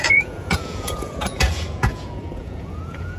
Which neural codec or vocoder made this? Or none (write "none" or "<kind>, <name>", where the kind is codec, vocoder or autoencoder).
vocoder, Vocos